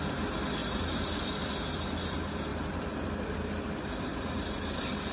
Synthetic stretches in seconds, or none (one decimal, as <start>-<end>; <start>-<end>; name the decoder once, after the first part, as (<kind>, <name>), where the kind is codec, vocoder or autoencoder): 0.6-1.4 (vocoder, BigVGAN v2); 2.5-3.1; 4.1-5.1